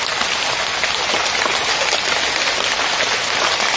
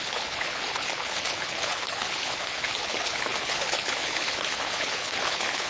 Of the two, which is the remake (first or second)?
second